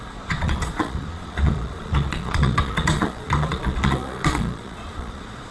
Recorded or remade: remade